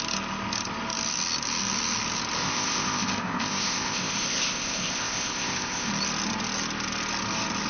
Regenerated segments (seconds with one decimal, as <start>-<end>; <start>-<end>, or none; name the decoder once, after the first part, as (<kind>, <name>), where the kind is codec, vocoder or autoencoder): 2.4-5.9 (codec, ZipCodec)